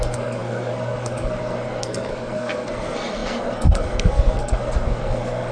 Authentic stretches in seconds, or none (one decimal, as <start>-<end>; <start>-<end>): none